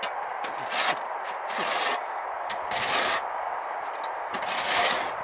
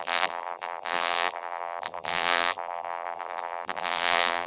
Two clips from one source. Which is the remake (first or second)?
second